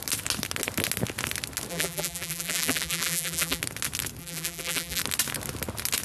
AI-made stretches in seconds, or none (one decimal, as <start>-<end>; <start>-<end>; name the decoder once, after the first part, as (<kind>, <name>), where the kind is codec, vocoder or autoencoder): 1.7-3.6 (vocoder, BigVGAN v2); 4.2-5.0